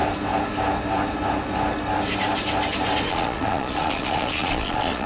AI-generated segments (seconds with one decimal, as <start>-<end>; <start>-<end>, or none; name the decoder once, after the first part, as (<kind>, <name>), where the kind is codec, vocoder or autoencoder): 3.1-5.1 (vocoder, Vocos)